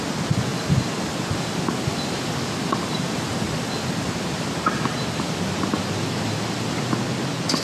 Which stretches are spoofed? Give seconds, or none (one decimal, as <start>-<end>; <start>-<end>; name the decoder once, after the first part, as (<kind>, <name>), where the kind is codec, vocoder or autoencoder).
none